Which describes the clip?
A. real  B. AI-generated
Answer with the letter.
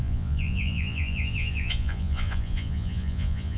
B